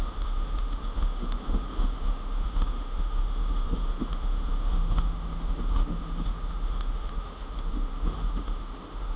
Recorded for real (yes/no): no